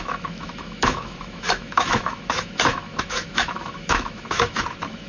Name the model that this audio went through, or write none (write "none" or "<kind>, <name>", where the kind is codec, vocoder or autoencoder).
autoencoder, DAC-VAE